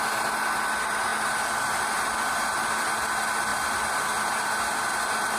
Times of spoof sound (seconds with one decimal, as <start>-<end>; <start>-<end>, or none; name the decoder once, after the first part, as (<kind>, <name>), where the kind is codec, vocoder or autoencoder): none